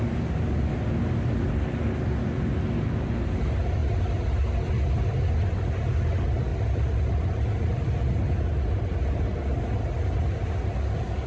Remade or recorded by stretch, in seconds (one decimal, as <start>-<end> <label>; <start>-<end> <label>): 0.0-11.3 recorded